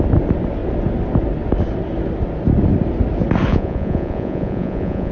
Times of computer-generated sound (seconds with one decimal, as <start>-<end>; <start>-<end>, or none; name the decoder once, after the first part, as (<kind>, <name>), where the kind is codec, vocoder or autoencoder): 3.5-5.1 (vocoder, Vocos)